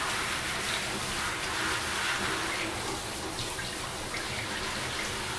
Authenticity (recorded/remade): recorded